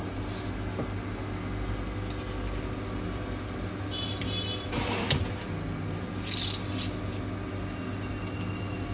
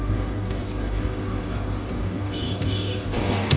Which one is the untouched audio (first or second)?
first